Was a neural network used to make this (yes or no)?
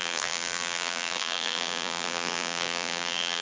yes